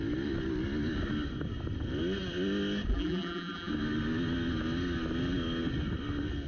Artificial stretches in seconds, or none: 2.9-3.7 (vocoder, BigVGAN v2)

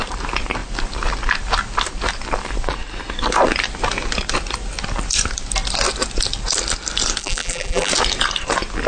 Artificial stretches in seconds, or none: 7.2-7.9 (vocoder, BigVGAN v2)

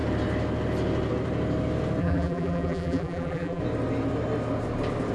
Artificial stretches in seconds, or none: 2.0-3.6 (vocoder, BigVGAN v2)

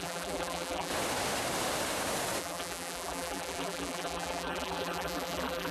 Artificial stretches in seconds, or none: 0.0-0.9 (vocoder, BigVGAN v2); 2.4-5.7

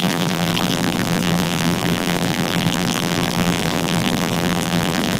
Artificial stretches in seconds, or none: 0.0-5.2 (vocoder, BigVGAN v2)

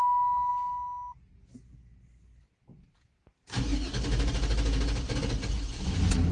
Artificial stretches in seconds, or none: none

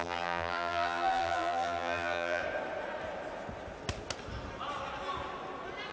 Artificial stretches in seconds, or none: 0.0-2.4 (vocoder, BigVGAN v2)

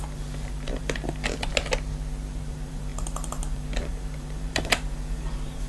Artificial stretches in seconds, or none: 0.0-1.5 (vocoder, BigVGAN v2); 2.3-5.7